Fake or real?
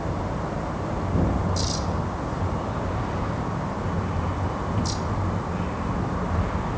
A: real